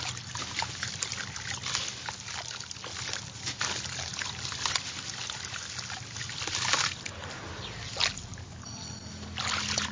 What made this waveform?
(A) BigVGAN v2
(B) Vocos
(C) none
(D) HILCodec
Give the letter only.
C